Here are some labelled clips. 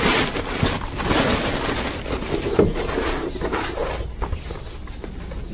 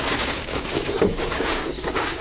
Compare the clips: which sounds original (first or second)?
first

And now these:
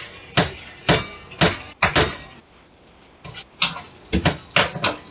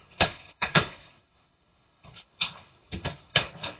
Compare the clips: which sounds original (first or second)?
first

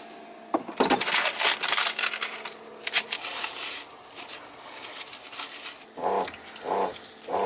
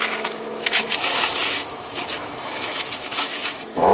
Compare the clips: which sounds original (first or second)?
first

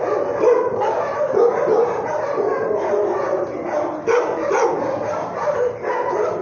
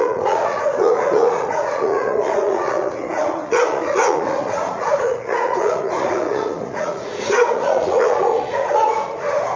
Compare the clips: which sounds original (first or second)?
first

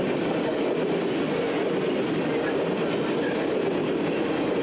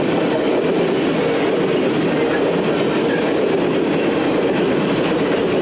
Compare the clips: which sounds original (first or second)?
second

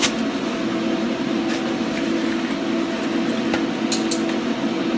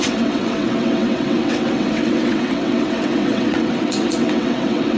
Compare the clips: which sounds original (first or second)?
first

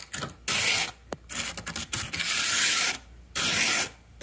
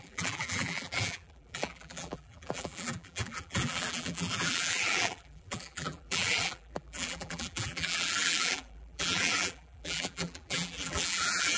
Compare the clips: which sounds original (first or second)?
first